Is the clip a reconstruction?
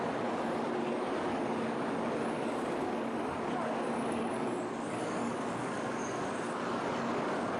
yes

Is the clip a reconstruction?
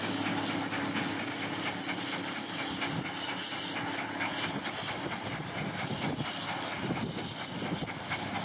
no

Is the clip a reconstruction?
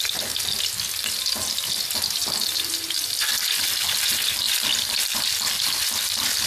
no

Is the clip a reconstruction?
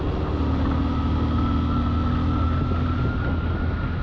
no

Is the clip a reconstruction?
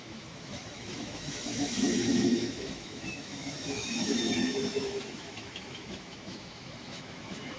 yes